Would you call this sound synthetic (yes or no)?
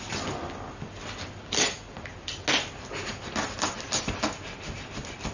no